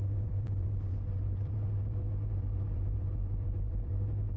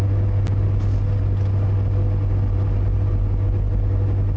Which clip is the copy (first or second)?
first